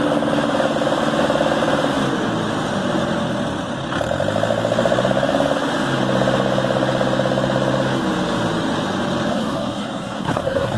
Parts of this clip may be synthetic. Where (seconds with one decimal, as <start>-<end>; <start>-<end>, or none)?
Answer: 9.3-10.8